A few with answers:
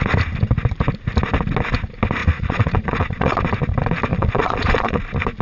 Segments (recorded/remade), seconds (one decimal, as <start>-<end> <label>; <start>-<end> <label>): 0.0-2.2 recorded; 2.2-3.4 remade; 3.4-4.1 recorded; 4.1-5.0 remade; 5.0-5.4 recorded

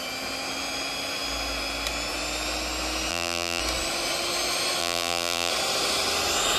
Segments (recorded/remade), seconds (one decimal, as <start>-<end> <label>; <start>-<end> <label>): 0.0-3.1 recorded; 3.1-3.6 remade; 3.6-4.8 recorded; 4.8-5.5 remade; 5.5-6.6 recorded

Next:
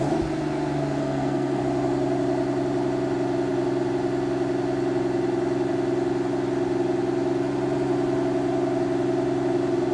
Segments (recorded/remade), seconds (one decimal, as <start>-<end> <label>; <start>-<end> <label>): 0.0-1.0 recorded; 1.0-1.6 remade; 1.6-9.9 recorded

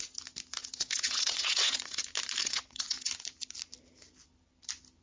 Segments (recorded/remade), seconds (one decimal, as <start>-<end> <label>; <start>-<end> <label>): 0.0-0.6 recorded; 0.6-2.0 remade; 2.0-2.4 recorded; 2.4-3.1 remade; 3.1-5.0 recorded

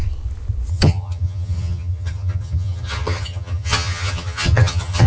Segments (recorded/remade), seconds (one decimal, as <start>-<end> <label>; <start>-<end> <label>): 0.0-0.7 recorded; 0.7-5.1 remade